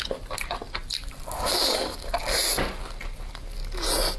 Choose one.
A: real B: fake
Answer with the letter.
A